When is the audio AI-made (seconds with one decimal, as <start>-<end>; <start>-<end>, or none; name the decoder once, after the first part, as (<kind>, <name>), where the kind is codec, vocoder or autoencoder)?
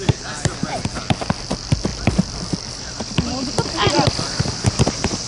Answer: 1.9-4.6 (vocoder, BigVGAN v2)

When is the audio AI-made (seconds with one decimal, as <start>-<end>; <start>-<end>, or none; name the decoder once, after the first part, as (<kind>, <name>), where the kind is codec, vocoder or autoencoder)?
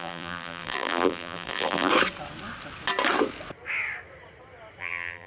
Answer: 0.0-1.9 (vocoder, BigVGAN v2); 4.8-5.3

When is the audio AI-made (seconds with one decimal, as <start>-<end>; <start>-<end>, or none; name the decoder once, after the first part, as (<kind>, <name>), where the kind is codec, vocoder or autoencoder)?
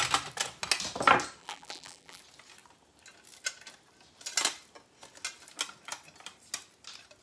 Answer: 1.4-2.2 (vocoder, BigVGAN v2)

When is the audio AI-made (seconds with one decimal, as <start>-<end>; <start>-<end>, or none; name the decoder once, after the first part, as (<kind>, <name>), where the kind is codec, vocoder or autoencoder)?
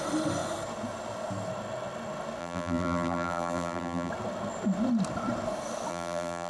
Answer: 2.4-4.1 (vocoder, BigVGAN v2); 5.9-6.5